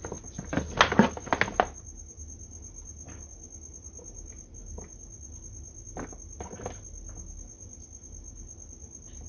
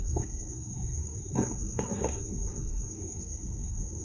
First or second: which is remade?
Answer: second